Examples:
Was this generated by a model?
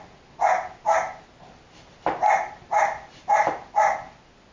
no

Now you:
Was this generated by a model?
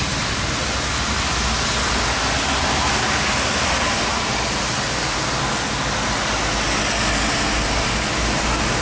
no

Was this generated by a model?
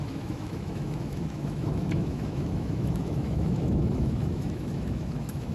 yes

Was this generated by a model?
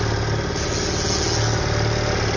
no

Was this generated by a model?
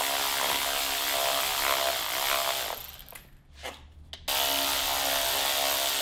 no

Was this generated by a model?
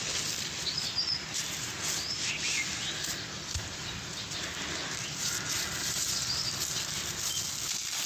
no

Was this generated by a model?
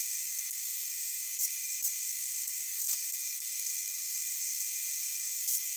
yes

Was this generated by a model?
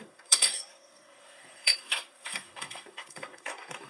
yes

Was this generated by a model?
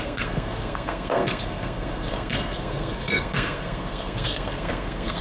yes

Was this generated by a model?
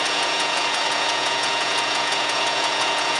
yes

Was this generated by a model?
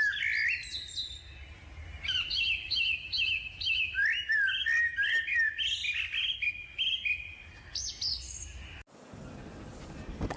no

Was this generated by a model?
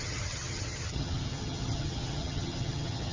yes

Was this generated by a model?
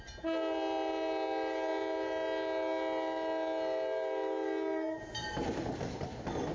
no